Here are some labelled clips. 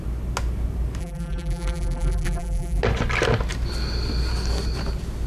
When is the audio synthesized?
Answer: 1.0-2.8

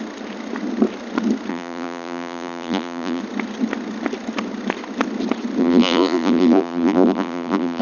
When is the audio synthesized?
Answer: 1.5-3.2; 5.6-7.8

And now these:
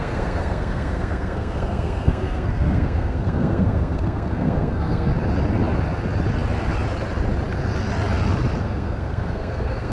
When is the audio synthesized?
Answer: 0.0-5.1; 8.6-9.9